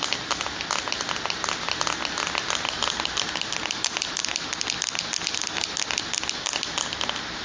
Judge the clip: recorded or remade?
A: recorded